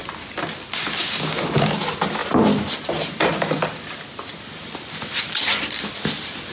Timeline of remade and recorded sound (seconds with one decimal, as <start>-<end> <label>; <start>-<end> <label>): 0.0-6.5 recorded